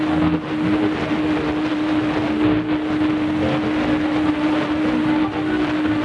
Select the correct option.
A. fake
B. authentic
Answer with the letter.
B